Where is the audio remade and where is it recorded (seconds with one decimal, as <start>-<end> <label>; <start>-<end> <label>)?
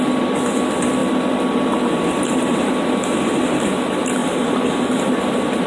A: 0.0-4.2 recorded; 4.2-5.1 remade; 5.1-5.7 recorded